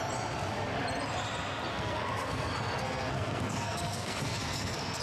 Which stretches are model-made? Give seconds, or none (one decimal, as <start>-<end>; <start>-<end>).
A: 1.7-5.0